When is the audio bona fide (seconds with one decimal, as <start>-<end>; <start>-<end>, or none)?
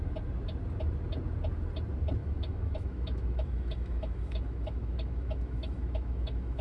0.0-2.2